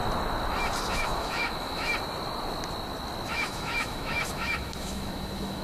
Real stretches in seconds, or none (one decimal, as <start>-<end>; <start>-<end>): 0.0-0.9; 1.9-3.3